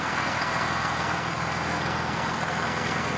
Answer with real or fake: fake